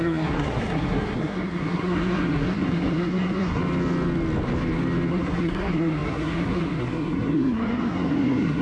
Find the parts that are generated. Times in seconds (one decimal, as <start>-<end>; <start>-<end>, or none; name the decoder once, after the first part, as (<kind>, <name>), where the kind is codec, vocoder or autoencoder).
0.0-3.6 (codec, SNAC); 5.1-8.6